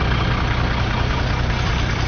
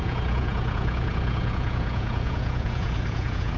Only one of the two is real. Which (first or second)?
first